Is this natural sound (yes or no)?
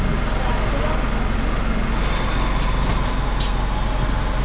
yes